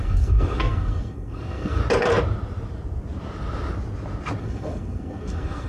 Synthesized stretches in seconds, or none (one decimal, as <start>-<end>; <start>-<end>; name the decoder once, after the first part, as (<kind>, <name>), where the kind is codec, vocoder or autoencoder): 0.0-1.8 (codec, SNAC); 4.4-5.7